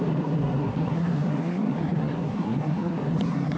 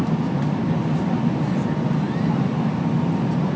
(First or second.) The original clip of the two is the second